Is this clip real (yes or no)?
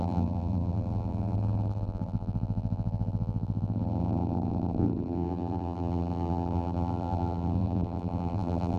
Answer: no